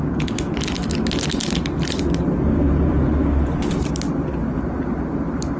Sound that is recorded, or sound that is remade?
recorded